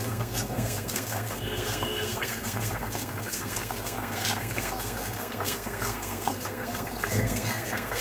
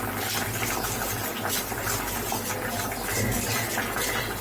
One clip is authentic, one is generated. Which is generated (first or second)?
first